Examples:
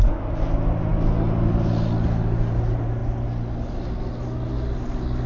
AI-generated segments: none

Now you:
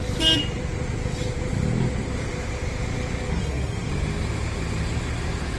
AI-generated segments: 3.3-3.9 (codec, SNAC)

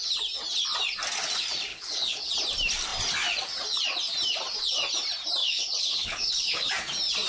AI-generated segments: 1.7-2.3 (codec, HILCodec); 5.4-6.7

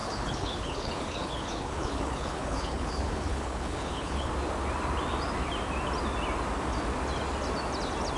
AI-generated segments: 0.0-4.3 (codec, HILCodec)

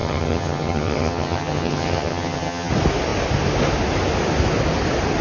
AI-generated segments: 0.0-2.7 (vocoder, HiFi-GAN)

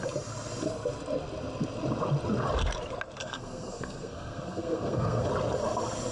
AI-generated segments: 3.2-5.3 (codec, SNAC)